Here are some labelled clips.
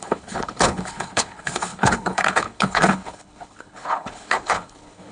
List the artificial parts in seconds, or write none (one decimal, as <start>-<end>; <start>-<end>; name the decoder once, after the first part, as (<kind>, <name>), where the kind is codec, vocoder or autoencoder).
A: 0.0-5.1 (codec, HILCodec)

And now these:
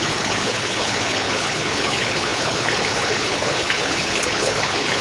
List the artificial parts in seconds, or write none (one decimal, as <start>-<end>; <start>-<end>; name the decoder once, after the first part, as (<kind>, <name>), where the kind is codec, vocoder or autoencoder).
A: 0.0-5.0 (codec, HILCodec)

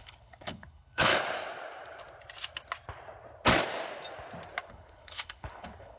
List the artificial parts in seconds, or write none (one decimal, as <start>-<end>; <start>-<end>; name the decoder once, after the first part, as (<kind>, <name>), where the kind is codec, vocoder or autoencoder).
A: 0.0-1.1 (codec, HILCodec); 4.7-6.0

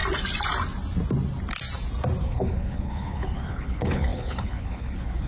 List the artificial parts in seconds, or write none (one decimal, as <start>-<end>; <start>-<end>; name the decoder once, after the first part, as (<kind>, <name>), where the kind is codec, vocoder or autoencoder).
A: 2.2-5.3 (codec, HILCodec)

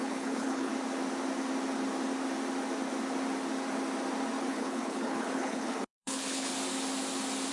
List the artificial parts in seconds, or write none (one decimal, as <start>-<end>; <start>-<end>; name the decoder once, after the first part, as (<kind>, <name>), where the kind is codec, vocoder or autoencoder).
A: 0.0-0.7 (codec, HILCodec); 4.4-6.5

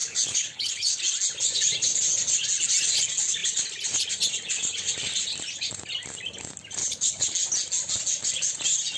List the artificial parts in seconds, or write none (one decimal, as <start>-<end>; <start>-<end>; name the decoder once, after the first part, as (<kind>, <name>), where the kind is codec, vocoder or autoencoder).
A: 0.0-1.0 (codec, HILCodec); 6.8-7.3